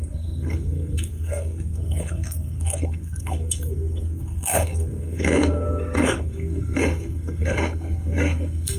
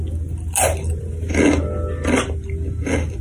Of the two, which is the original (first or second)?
second